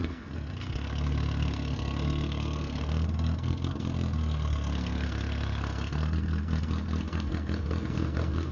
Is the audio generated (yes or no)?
yes